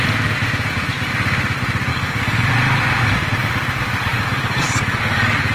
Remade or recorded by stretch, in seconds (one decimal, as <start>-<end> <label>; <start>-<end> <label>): 0.0-1.9 recorded; 1.9-2.5 remade; 2.5-4.1 recorded; 4.1-5.5 remade